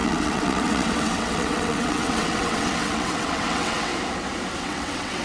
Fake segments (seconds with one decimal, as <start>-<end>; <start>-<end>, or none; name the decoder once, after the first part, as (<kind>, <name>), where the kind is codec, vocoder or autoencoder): 0.0-3.9 (vocoder, WaveNeXt); 4.6-5.2